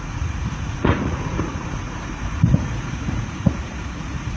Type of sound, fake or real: fake